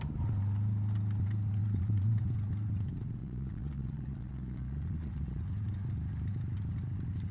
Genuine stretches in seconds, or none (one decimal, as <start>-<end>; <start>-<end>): 0.0-1.6; 2.2-3.2; 5.4-7.3